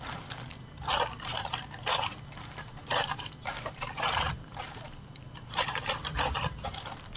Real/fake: fake